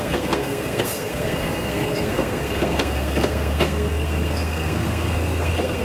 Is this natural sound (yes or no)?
no